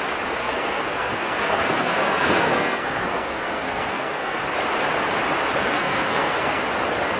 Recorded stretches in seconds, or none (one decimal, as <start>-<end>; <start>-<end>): 0.0-0.4; 4.4-5.6; 6.6-7.2